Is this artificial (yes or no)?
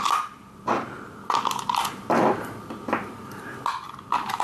no